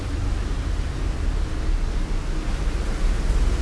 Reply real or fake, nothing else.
real